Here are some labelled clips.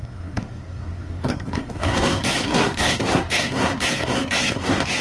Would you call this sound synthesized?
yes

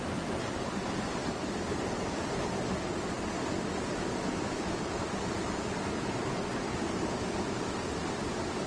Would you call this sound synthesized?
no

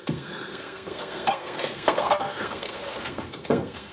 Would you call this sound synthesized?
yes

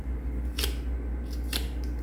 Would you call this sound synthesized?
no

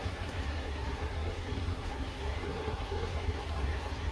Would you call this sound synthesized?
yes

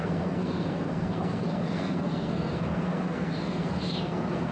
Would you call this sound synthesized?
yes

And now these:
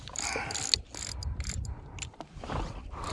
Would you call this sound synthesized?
no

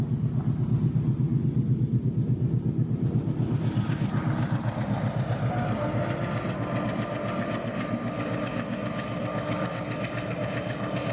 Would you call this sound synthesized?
no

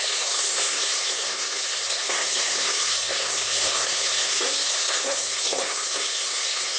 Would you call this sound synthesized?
yes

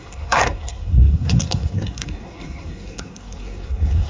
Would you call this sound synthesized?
yes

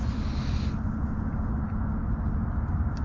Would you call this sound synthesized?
no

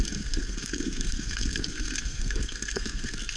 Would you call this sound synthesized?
yes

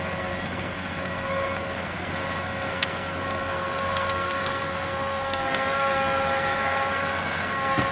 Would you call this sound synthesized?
yes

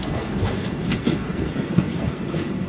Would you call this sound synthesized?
yes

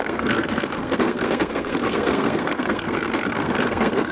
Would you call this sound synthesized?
yes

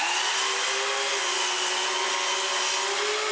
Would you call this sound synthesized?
no